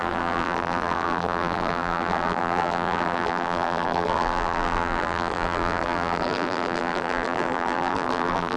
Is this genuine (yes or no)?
no